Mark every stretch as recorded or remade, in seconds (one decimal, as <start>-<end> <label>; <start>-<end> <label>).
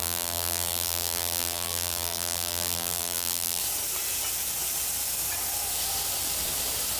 0.0-3.6 remade; 3.6-7.0 recorded